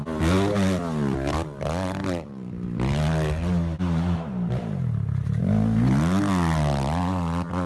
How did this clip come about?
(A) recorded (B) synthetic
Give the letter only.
A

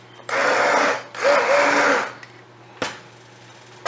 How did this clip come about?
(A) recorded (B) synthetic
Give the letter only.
A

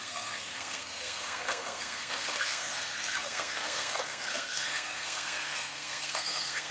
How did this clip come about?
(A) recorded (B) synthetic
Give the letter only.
B